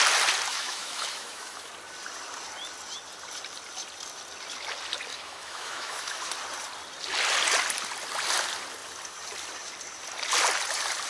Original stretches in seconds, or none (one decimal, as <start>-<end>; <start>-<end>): 0.0-0.5; 1.7-5.1; 6.3-11.1